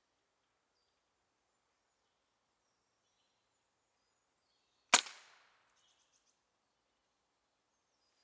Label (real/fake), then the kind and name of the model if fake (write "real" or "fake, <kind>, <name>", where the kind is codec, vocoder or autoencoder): real